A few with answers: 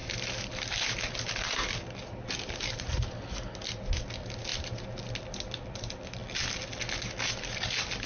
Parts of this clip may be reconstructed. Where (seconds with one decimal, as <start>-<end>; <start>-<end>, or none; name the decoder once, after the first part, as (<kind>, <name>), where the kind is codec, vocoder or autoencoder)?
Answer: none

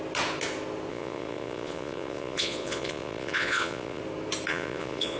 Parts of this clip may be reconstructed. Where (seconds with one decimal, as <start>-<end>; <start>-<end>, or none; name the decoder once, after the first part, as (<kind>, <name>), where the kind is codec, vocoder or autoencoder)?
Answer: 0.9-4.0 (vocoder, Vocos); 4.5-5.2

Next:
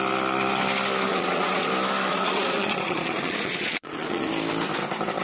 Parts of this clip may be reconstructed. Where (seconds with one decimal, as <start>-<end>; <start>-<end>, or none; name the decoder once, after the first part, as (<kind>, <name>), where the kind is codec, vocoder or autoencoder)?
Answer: 1.1-1.7 (vocoder, Vocos); 2.1-4.3

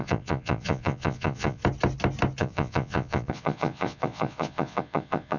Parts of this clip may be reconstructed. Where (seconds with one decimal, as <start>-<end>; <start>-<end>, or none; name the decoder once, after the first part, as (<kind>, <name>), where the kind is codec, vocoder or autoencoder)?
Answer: 0.0-1.6 (vocoder, Vocos); 2.4-5.4

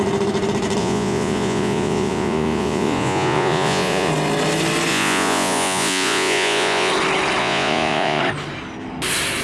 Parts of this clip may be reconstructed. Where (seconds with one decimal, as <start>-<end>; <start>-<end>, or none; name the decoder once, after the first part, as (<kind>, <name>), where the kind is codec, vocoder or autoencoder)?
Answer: 0.8-4.1 (vocoder, Vocos); 4.9-6.9; 7.4-8.2

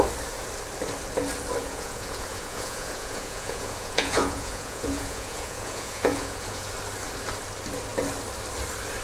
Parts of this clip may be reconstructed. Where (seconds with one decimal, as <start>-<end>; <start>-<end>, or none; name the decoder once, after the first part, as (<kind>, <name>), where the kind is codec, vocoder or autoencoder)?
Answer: 1.6-6.7 (vocoder, Vocos)

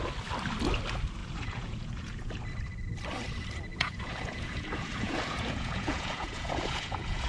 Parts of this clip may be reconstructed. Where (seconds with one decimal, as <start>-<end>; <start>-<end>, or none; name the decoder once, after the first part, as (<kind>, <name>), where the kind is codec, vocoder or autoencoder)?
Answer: 1.2-2.4 (vocoder, Vocos); 3.7-7.3